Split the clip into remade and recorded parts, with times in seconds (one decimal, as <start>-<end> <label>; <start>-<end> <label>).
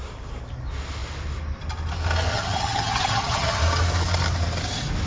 0.0-2.3 recorded; 2.3-3.6 remade; 3.6-5.1 recorded